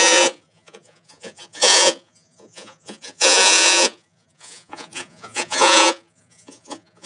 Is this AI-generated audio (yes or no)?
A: yes